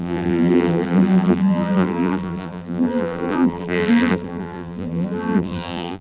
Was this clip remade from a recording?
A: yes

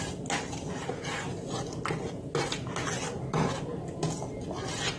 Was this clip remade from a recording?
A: no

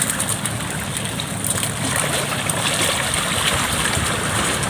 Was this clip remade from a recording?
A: no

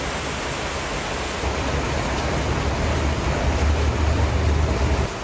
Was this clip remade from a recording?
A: no